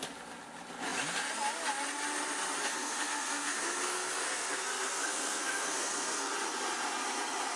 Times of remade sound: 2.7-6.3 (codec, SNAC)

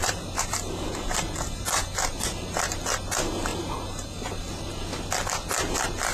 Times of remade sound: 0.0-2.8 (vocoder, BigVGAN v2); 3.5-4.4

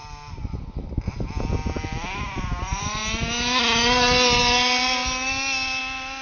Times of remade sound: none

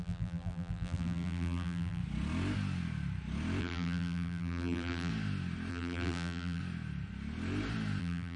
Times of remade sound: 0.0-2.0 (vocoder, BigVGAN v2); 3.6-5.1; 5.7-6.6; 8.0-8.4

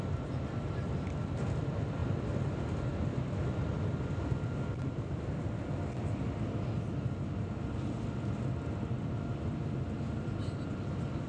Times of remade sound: none

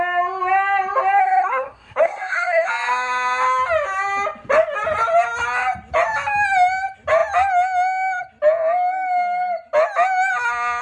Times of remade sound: 1.2-2.7 (codec, SNAC)

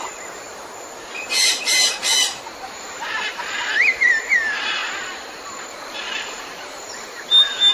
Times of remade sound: 0.0-2.0 (vocoder, BigVGAN v2); 2.8-4.8; 5.8-7.7